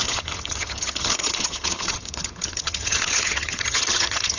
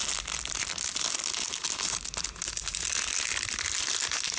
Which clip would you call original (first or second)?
second